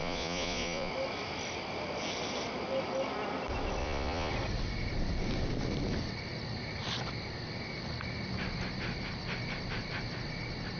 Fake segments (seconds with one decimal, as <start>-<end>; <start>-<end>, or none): 0.0-0.9; 3.8-4.3